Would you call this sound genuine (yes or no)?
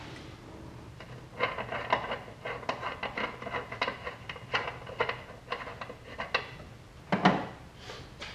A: yes